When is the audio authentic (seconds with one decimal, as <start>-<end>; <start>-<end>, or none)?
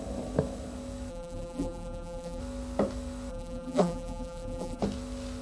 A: 0.0-1.1; 2.4-3.3; 4.8-5.4